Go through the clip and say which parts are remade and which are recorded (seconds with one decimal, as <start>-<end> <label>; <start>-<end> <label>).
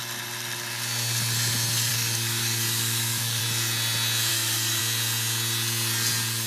0.0-1.9 recorded; 1.9-3.4 remade; 3.4-4.3 recorded; 4.3-4.8 remade; 4.8-6.5 recorded